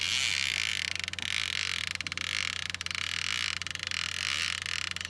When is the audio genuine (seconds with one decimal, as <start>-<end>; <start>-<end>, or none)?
0.0-5.1